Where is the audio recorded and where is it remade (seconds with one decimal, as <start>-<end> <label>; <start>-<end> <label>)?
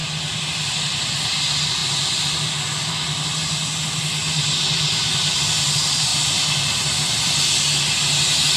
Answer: 0.0-1.8 recorded; 1.8-2.3 remade; 2.3-6.1 recorded; 6.1-7.4 remade; 7.4-8.6 recorded